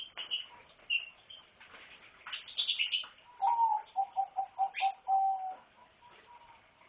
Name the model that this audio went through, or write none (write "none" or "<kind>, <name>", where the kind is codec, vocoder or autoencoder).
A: none